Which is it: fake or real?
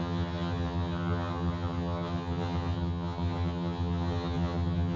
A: fake